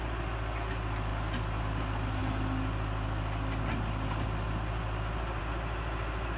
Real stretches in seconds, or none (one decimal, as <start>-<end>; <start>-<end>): 0.0-6.4